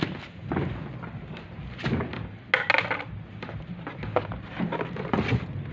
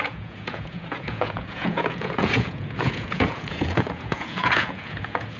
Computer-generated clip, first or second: second